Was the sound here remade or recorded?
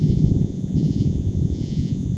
remade